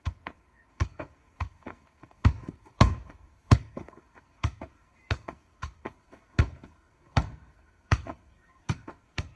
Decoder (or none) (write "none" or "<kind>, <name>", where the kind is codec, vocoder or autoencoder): codec, SNAC